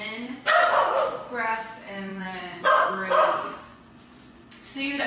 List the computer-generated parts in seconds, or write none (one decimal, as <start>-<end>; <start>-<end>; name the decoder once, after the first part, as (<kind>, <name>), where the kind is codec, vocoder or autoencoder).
2.1-2.9 (vocoder, Vocos); 3.7-5.1